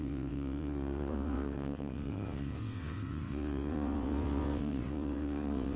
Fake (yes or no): yes